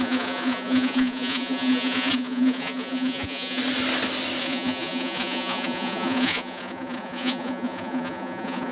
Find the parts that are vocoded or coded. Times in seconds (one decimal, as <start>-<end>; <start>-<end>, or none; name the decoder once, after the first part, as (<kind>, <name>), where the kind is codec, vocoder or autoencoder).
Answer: 0.0-3.6 (vocoder, Vocos); 4.4-8.7